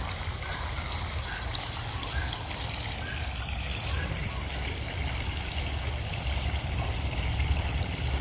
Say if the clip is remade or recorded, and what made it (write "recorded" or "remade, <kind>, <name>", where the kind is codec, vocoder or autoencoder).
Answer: recorded